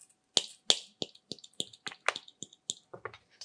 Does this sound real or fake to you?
real